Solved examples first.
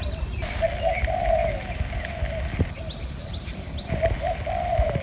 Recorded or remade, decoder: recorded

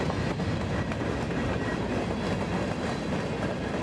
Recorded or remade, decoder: recorded